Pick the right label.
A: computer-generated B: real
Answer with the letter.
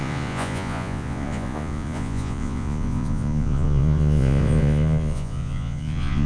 A